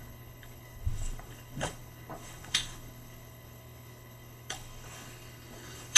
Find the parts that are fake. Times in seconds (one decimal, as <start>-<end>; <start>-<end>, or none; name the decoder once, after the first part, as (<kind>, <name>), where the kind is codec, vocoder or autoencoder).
0.0-6.0 (codec, HILCodec)

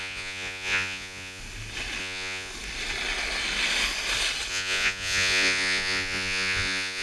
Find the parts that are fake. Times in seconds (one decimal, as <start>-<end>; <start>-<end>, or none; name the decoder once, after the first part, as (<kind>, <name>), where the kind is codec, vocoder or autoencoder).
0.0-1.4 (vocoder, Vocos); 2.0-2.5; 4.5-7.0

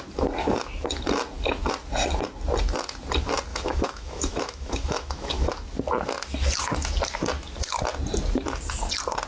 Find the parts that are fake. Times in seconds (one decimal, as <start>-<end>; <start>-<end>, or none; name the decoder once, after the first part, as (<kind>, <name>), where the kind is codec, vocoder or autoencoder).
3.5-5.5 (autoencoder, DAC-VAE)

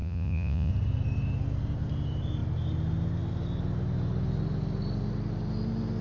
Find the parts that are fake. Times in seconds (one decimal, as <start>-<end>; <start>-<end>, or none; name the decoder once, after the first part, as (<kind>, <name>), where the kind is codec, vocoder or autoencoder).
0.0-0.7 (vocoder, Vocos)

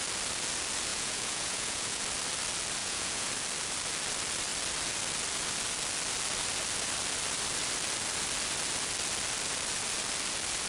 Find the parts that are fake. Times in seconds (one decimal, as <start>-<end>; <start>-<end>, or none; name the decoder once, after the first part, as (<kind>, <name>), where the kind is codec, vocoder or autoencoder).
0.9-2.0 (vocoder, Vocos); 2.8-3.3

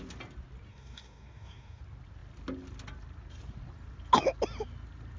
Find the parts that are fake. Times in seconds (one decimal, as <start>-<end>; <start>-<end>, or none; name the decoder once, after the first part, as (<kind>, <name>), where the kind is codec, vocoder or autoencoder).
0.7-1.8 (codec, DAC)

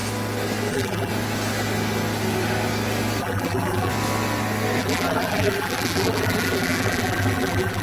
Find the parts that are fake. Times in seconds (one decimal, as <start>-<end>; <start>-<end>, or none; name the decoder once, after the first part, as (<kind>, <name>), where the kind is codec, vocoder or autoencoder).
0.7-1.1 (vocoder, BigVGAN v2); 3.2-3.9; 4.8-7.8

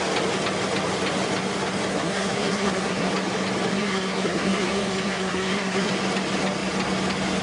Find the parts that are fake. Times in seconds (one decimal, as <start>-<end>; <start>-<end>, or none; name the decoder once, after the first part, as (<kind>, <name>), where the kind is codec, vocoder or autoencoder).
1.9-3.1 (codec, SNAC); 3.7-5.9